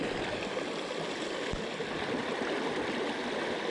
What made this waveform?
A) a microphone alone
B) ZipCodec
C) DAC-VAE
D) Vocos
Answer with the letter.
A